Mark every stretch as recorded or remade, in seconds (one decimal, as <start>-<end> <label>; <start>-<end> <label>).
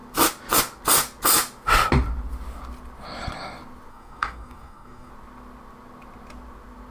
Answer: 0.0-3.9 recorded; 3.9-5.1 remade; 5.1-6.9 recorded